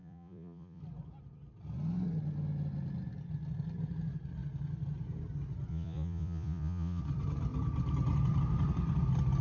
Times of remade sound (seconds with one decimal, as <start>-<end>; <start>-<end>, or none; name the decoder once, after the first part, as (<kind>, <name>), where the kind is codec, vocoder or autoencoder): 0.0-0.8 (vocoder, Vocos); 5.7-7.0